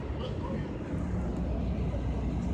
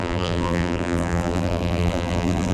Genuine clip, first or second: first